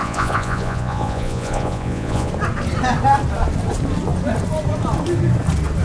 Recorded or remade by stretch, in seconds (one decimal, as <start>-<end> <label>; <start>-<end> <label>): 0.0-2.3 remade; 2.3-5.8 recorded